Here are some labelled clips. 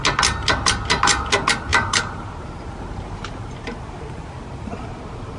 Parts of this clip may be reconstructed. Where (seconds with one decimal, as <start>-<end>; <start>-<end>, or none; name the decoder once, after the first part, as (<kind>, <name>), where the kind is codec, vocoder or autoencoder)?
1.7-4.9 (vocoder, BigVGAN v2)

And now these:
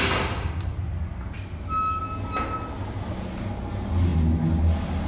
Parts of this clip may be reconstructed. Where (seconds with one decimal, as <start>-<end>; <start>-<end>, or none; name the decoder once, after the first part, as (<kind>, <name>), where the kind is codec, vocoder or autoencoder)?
none

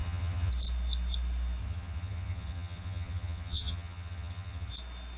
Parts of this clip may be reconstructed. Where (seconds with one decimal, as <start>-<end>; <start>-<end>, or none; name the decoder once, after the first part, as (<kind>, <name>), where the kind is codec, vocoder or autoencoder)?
0.0-0.5 (vocoder, HiFi-GAN); 1.6-4.7

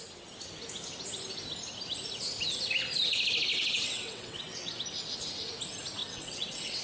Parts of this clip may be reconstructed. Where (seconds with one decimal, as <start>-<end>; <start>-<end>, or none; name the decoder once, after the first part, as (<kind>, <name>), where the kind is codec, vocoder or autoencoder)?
3.5-4.7 (vocoder, WaveNeXt); 6.0-6.8

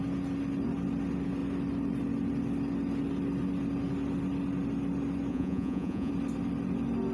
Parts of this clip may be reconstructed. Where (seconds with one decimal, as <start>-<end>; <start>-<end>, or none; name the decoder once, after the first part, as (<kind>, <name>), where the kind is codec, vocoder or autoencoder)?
5.3-6.1 (vocoder, Vocos)

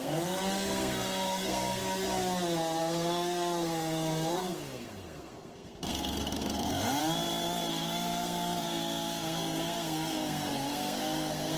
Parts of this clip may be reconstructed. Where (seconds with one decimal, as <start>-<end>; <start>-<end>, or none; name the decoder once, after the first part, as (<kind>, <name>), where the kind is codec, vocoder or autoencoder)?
0.0-1.8 (codec, SNAC); 2.8-7.0; 7.7-11.6